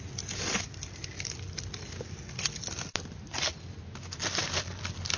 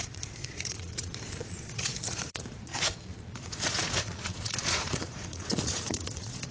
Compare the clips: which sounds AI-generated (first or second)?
second